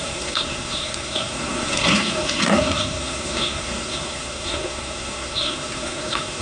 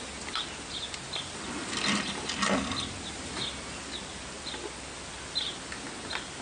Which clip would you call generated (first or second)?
first